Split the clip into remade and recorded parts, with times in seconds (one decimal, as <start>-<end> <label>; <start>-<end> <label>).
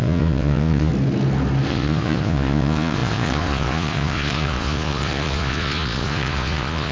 0.0-0.9 remade; 0.9-1.7 recorded; 1.7-6.9 remade